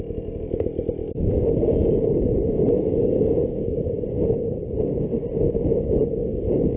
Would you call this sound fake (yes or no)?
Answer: no